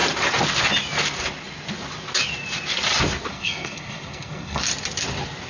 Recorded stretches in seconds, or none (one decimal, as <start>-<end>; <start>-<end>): 0.0-3.3; 4.6-5.5